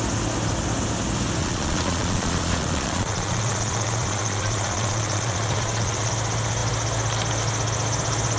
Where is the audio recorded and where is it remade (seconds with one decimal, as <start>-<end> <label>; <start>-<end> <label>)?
0.0-1.4 recorded; 1.4-6.1 remade; 6.1-8.4 recorded